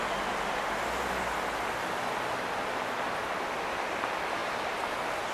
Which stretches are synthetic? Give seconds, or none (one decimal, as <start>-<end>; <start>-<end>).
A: none

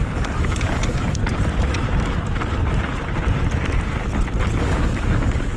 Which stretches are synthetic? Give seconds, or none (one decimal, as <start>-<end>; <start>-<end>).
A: 0.0-1.2; 4.6-5.6

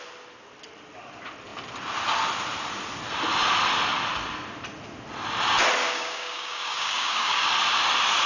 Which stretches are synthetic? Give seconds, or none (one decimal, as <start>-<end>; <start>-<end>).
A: 5.8-7.5

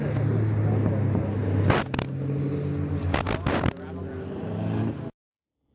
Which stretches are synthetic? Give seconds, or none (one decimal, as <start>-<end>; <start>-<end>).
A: none